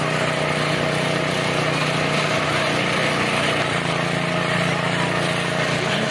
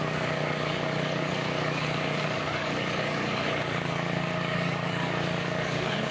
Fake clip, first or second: second